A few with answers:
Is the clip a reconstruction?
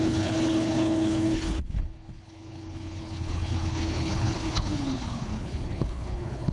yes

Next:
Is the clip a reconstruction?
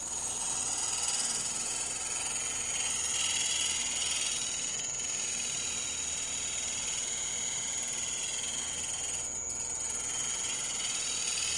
no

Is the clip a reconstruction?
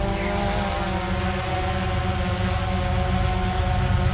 no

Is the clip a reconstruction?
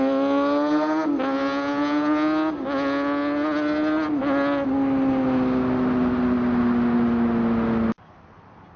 no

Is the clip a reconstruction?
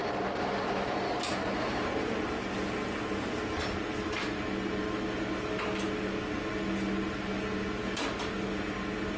no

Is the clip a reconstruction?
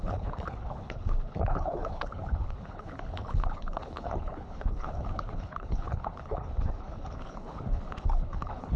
yes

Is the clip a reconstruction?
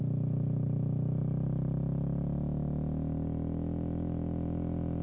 no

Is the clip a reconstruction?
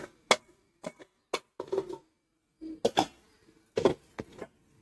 no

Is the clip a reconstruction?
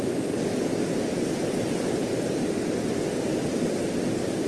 no